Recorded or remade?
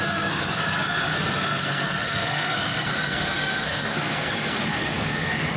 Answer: remade